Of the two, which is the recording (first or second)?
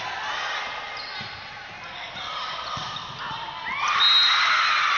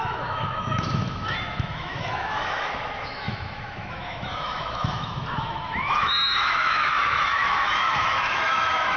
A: first